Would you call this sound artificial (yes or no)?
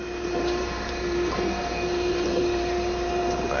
yes